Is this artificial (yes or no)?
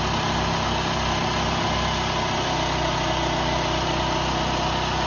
no